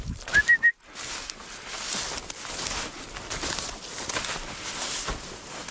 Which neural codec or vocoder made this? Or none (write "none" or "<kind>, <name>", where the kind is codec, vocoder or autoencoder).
none